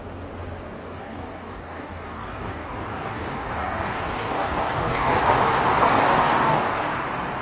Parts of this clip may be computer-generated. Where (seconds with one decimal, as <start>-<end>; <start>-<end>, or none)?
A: 0.8-5.2; 6.0-6.9

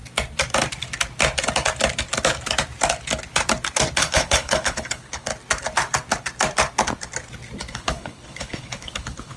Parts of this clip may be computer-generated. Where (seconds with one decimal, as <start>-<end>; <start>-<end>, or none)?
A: 4.0-5.3; 7.7-9.4